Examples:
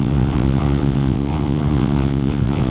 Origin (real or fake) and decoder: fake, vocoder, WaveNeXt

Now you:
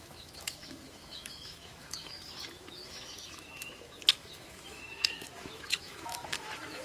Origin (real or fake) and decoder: fake, autoencoder, DAC-VAE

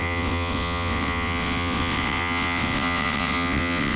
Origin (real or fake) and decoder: fake, vocoder, WaveNeXt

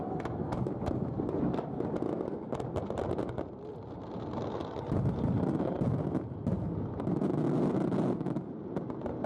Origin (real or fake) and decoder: real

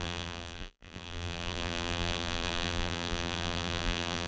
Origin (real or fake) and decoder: fake, vocoder, BigVGAN v2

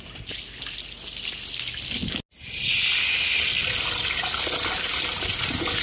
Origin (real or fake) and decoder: real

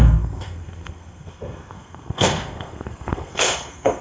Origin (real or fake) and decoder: fake, codec, SNAC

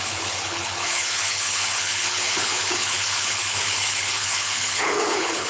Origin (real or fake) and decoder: fake, codec, HILCodec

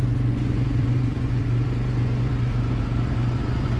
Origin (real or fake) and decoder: fake, vocoder, Vocos